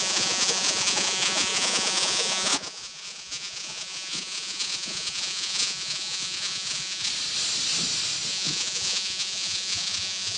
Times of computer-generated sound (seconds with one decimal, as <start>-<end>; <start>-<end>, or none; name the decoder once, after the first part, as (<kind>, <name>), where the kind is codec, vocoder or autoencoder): 0.0-7.1 (vocoder, Vocos); 8.3-10.4